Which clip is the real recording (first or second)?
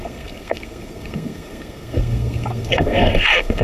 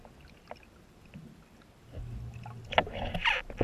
second